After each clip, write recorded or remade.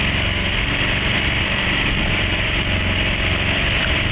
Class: recorded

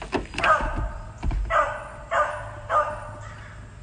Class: recorded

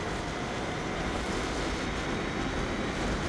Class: recorded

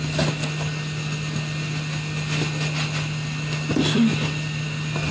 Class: recorded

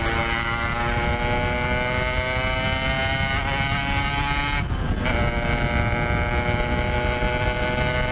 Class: recorded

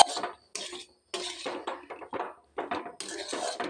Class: recorded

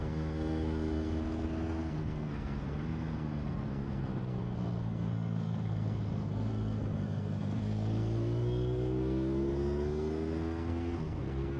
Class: remade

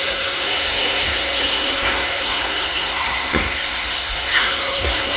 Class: remade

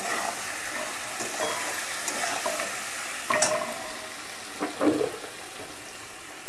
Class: recorded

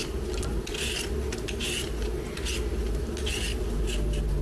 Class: recorded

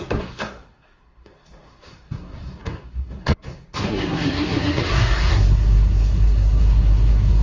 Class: remade